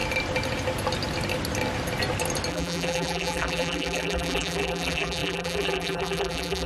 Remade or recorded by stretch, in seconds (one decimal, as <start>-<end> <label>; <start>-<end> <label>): 0.0-2.5 recorded; 2.5-6.7 remade